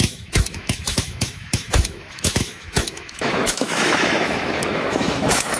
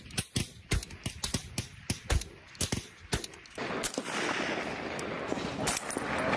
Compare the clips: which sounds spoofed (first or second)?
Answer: first